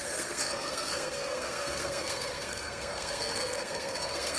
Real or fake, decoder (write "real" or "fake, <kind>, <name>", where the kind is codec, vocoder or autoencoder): fake, codec, SNAC